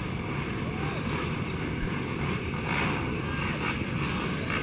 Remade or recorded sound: recorded